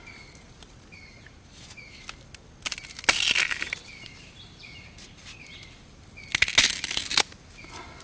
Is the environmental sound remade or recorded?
recorded